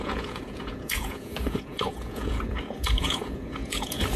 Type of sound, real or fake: fake